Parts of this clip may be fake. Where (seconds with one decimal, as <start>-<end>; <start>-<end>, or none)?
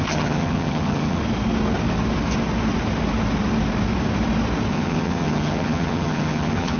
0.0-1.2; 4.7-6.8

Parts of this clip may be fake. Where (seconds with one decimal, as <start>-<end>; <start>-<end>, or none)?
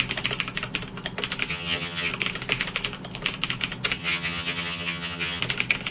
1.5-2.1; 4.0-5.4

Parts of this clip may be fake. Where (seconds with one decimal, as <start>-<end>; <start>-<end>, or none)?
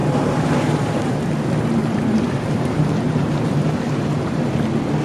0.0-1.2; 1.8-4.6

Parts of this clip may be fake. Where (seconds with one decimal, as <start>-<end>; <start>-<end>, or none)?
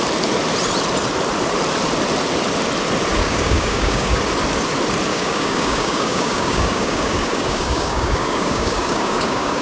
3.2-4.2; 5.1-9.6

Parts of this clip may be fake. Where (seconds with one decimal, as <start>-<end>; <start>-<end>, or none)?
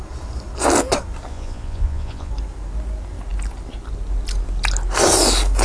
1.3-2.3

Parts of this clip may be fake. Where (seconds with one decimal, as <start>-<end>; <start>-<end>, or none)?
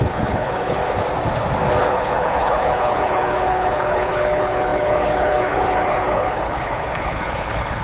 0.0-0.8; 1.8-7.8